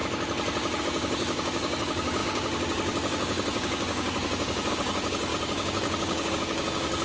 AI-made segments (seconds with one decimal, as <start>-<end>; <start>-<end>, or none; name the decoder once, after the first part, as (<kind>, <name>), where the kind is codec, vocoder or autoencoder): 0.8-7.0 (codec, DAC)